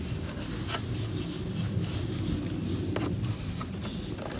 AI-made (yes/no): no